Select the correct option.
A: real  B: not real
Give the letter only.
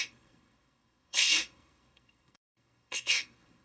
B